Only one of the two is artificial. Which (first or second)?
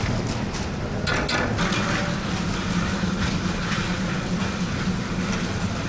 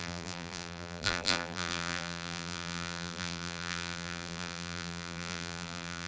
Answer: second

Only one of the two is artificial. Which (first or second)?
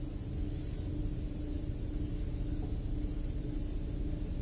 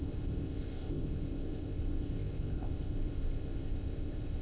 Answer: second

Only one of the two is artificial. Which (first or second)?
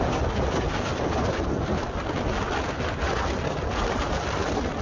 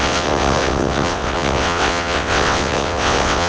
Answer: second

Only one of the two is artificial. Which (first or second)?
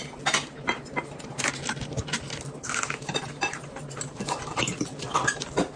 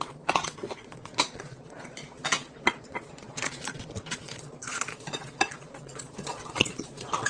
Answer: second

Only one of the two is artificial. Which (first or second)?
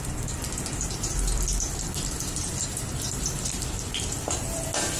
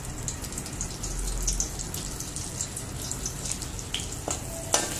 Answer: first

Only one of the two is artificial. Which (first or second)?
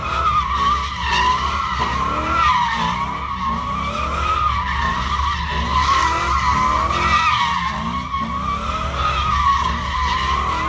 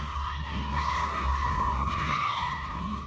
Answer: second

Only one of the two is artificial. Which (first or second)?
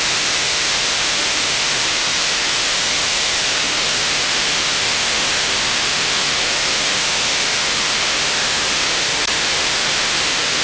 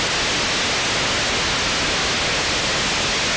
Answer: first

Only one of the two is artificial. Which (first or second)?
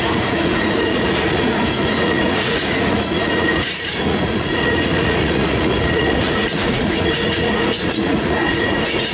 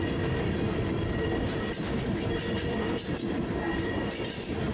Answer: first